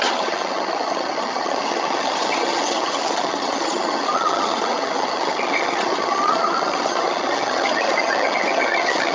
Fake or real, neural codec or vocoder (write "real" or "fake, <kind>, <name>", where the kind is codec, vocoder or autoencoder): fake, vocoder, HiFi-GAN